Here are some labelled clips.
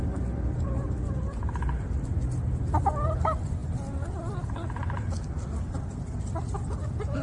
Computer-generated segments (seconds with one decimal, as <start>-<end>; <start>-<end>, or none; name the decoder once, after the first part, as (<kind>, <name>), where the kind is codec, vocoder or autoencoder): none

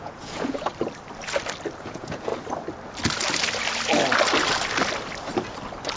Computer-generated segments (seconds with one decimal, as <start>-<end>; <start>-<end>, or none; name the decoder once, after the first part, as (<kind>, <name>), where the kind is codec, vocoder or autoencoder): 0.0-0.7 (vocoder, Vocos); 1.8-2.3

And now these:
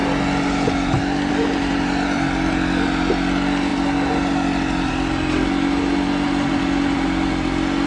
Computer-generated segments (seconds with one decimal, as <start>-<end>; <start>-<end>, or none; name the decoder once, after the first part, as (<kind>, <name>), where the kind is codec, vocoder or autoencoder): none

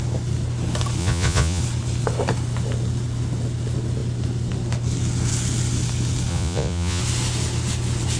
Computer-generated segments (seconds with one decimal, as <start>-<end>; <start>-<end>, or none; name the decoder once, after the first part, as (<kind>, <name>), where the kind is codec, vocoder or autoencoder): 1.0-1.6 (vocoder, Vocos); 6.3-7.0

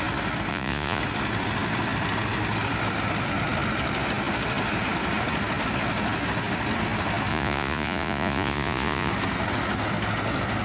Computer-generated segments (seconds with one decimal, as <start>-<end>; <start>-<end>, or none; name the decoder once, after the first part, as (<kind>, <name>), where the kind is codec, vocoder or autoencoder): 0.5-1.0 (vocoder, Vocos); 7.3-9.1

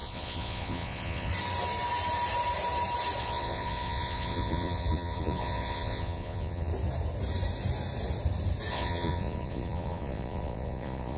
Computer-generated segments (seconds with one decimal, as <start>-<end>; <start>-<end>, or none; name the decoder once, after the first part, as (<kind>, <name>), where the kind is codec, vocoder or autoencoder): 0.0-1.3 (vocoder, Vocos); 3.2-6.7; 8.7-11.2

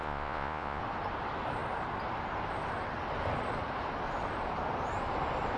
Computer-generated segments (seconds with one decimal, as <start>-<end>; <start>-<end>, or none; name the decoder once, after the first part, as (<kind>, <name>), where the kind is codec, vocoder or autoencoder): 0.0-0.8 (vocoder, Vocos)